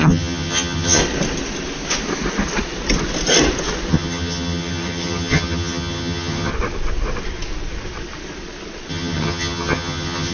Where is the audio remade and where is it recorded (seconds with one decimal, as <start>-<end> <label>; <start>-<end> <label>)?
0.0-1.0 remade; 1.0-3.9 recorded; 3.9-6.5 remade; 6.5-8.9 recorded; 8.9-10.3 remade